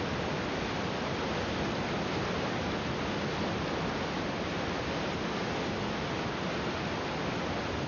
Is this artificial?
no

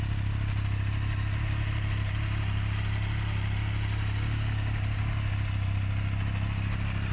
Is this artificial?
no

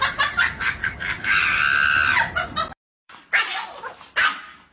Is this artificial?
yes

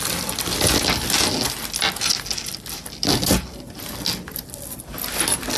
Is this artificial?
no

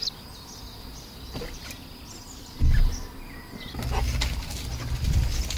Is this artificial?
no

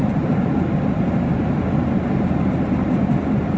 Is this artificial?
no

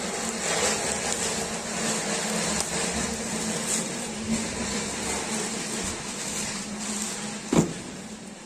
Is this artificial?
no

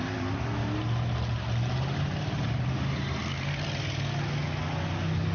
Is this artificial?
no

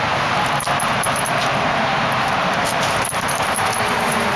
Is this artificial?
yes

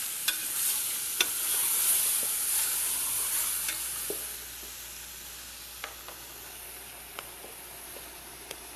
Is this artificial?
no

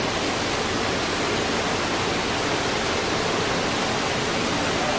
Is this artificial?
no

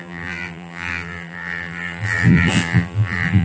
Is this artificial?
yes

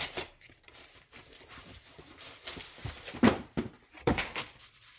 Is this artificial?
yes